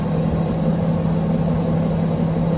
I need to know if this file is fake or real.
real